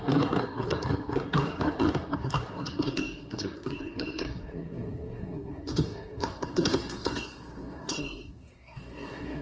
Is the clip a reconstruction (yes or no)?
yes